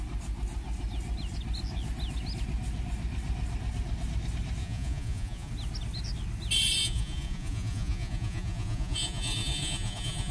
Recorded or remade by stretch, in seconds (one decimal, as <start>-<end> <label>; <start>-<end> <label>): 0.0-4.6 recorded; 4.6-5.5 remade; 5.5-6.8 recorded; 6.8-10.3 remade

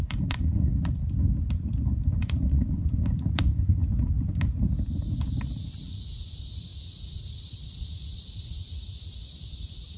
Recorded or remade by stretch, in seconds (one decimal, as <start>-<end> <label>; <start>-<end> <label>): 0.0-1.0 remade; 1.0-1.9 recorded; 1.9-3.8 remade; 3.8-5.8 recorded; 5.8-10.0 remade

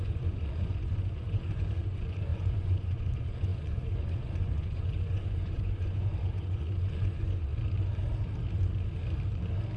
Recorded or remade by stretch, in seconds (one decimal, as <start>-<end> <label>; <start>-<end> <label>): 0.0-7.5 remade; 7.5-9.8 recorded

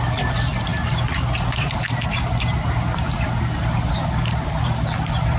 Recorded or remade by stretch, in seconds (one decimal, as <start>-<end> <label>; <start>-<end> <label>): 0.0-5.4 recorded

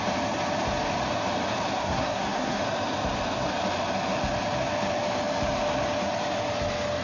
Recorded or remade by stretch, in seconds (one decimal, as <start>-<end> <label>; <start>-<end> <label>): 0.0-1.8 recorded; 1.8-2.6 remade; 2.6-7.0 recorded

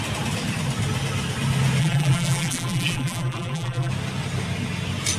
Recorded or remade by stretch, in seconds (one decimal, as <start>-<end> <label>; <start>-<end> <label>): 0.0-1.8 recorded; 1.8-3.9 remade; 3.9-5.2 recorded